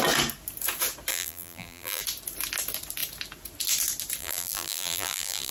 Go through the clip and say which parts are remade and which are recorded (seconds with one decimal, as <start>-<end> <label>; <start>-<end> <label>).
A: 0.0-1.1 recorded; 1.1-2.0 remade; 2.0-4.2 recorded; 4.2-5.5 remade